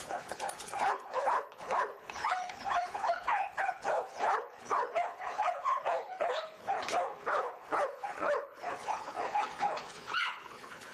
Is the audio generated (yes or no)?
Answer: yes